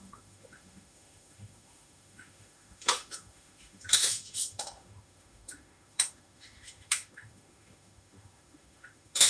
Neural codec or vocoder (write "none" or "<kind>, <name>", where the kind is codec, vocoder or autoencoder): autoencoder, DAC-VAE